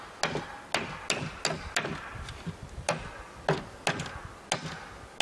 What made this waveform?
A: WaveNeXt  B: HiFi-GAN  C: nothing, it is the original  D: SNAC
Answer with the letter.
C